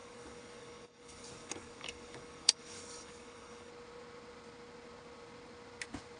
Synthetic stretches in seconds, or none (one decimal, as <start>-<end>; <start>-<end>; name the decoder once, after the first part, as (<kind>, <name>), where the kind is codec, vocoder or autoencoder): 0.0-3.7 (codec, DAC)